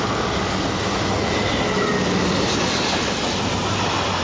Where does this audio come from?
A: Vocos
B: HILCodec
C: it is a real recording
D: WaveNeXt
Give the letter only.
C